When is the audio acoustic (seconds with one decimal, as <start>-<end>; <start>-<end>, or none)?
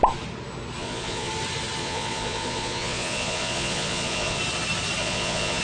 0.0-0.8; 1.3-1.8; 4.4-5.0